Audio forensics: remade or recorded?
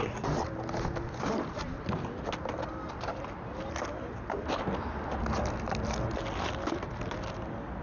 recorded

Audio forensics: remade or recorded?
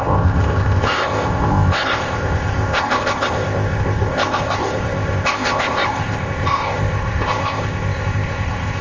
remade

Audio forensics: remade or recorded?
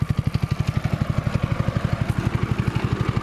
recorded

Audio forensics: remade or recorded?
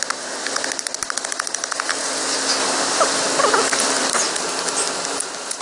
recorded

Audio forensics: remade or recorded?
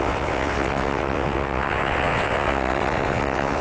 remade